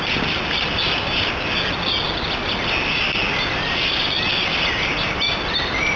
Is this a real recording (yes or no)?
yes